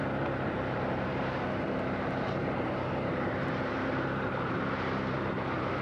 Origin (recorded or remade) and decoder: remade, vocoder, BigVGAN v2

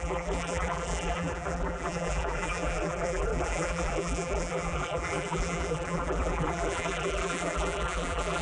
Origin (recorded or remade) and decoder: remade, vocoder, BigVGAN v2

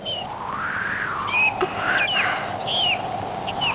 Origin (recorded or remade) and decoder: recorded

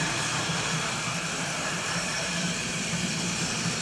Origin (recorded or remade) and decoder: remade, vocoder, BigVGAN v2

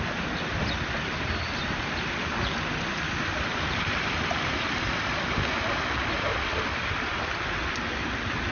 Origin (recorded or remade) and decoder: remade, vocoder, BigVGAN v2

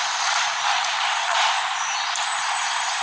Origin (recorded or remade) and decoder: recorded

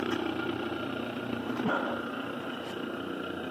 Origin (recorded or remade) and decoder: remade, vocoder, BigVGAN v2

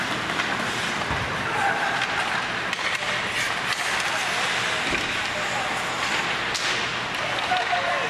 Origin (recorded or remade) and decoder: recorded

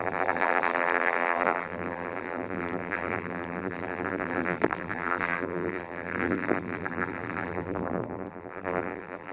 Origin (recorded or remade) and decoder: remade, vocoder, BigVGAN v2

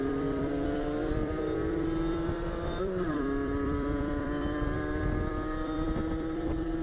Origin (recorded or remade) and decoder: remade, vocoder, BigVGAN v2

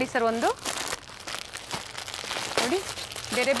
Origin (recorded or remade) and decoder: recorded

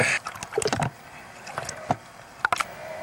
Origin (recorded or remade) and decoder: recorded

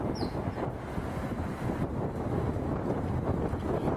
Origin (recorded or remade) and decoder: recorded